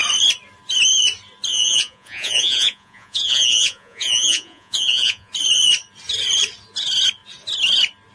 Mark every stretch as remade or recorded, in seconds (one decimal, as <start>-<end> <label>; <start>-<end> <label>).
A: 0.0-1.5 recorded; 1.5-5.3 remade; 5.3-8.1 recorded

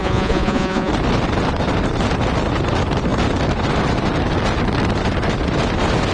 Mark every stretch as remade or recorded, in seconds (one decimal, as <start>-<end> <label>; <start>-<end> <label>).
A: 0.0-0.9 remade; 0.9-6.1 recorded

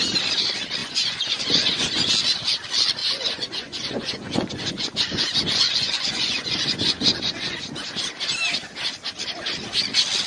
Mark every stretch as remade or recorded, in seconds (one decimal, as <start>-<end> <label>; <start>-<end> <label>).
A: 0.0-0.8 recorded; 0.8-2.1 remade; 2.1-3.0 recorded; 3.0-8.1 remade; 8.1-10.3 recorded